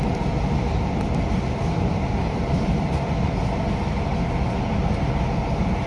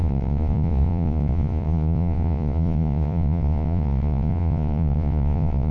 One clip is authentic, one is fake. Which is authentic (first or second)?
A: first